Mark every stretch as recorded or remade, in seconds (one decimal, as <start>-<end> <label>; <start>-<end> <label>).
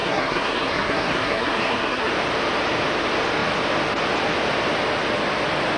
0.0-2.1 remade; 2.1-5.8 recorded